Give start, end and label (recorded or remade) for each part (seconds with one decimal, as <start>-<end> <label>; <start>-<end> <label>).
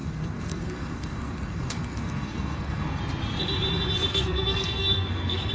0.0-3.0 remade; 3.0-4.1 recorded; 4.1-5.5 remade